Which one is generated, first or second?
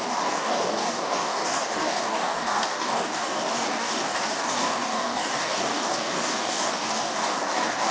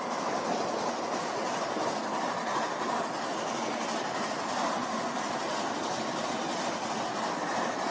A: first